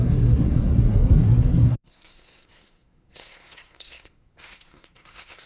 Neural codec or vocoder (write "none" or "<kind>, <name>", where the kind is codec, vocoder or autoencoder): codec, SNAC